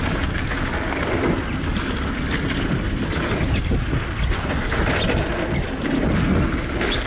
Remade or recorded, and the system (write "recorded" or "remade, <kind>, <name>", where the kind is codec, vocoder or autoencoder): recorded